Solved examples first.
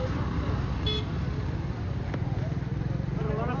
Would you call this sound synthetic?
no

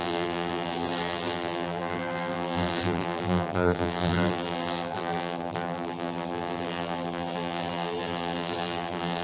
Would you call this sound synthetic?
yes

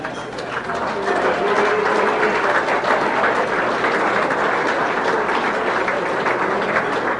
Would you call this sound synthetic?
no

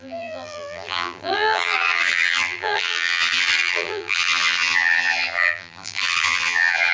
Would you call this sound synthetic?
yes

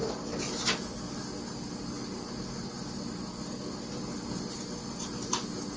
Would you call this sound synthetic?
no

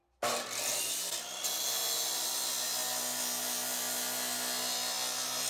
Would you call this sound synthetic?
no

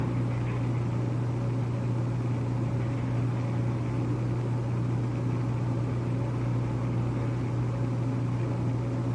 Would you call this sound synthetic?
no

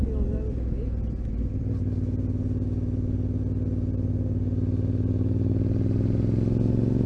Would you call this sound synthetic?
no